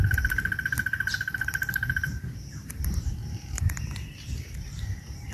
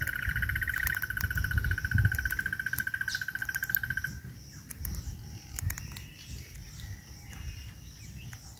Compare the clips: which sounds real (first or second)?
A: second